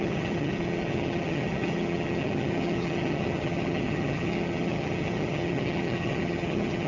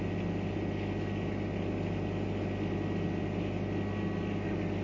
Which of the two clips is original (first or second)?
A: second